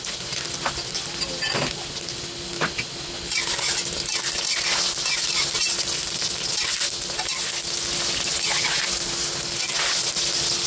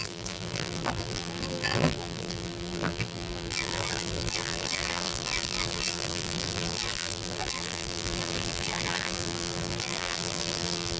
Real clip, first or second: first